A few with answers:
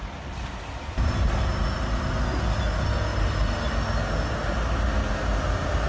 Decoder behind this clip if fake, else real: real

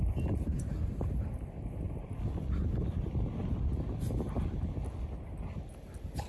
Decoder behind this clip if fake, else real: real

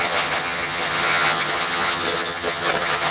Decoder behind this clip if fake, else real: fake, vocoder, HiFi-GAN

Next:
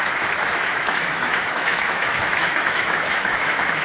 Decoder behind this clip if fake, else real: fake, autoencoder, DAC-VAE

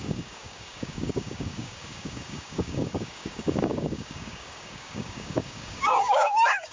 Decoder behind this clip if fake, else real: fake, codec, DAC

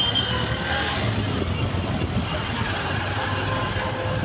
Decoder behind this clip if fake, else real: real